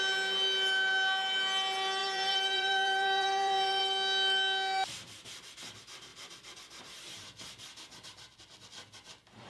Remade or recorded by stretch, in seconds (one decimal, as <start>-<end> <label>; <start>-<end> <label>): 0.0-2.0 recorded; 2.0-3.8 remade; 3.8-6.1 recorded; 6.1-8.2 remade; 8.2-9.5 recorded